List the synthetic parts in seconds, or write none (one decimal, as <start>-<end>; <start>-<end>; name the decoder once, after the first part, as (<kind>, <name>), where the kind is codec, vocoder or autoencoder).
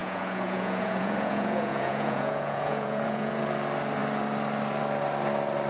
0.0-3.4 (vocoder, Vocos)